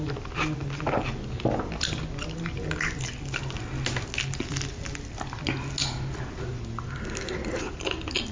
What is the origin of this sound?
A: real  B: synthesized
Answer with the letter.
A